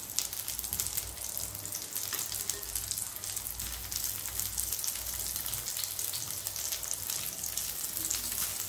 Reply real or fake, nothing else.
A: real